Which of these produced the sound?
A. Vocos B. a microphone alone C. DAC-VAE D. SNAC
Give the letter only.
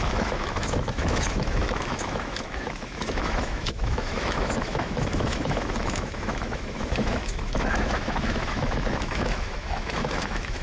C